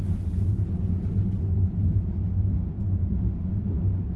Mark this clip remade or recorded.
recorded